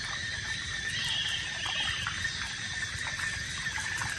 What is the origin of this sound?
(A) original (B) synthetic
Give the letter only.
A